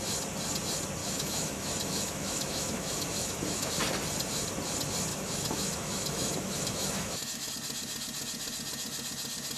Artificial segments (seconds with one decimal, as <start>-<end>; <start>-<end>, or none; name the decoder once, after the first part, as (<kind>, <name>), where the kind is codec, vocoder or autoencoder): 1.0-3.7 (autoencoder, DAC-VAE); 5.1-7.5